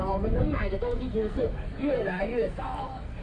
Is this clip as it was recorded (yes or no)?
no